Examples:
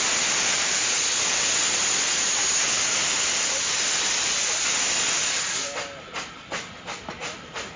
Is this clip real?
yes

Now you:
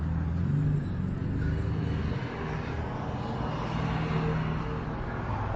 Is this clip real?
yes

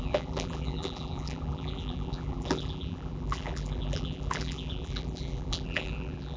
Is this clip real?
no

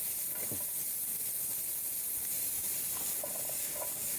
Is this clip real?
yes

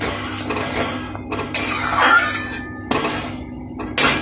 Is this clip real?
yes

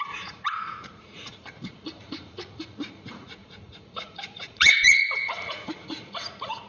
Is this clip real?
no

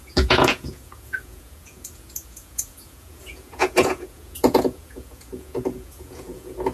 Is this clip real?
no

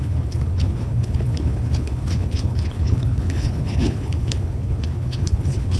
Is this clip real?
no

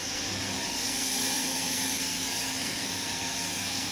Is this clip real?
no